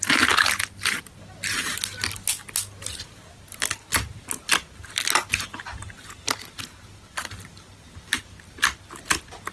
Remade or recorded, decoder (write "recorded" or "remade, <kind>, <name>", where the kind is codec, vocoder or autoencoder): recorded